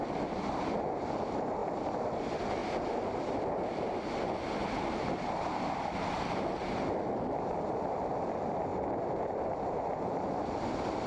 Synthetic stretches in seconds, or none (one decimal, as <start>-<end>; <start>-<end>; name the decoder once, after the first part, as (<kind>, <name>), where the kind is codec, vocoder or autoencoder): none